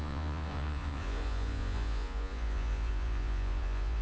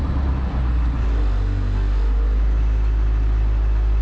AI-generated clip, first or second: first